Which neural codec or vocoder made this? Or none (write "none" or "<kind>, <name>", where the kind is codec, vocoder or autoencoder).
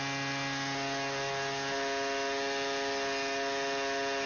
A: none